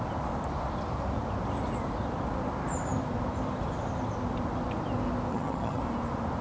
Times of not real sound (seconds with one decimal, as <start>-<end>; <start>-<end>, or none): 5.3-5.8